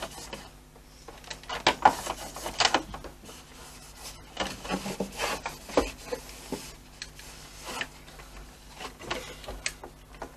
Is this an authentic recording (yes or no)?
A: yes